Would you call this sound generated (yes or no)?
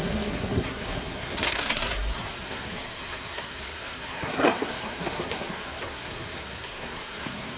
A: yes